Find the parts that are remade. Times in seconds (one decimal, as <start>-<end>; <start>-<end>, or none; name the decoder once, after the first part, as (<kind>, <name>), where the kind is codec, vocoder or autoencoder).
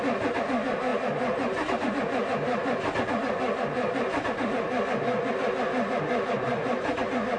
none